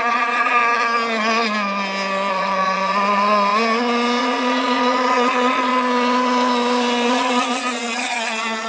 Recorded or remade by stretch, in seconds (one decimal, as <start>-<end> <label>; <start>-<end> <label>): 0.0-0.6 remade; 0.6-2.3 recorded; 2.3-3.5 remade; 3.5-4.2 recorded; 4.2-5.7 remade; 5.7-7.1 recorded; 7.1-8.7 remade